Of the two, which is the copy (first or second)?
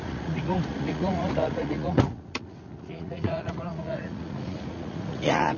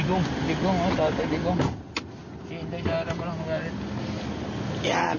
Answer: first